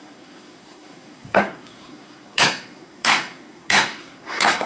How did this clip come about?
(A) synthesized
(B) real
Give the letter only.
A